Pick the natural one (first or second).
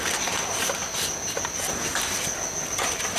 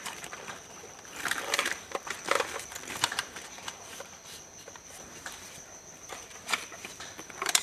first